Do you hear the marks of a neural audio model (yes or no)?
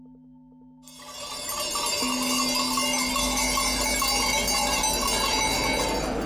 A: no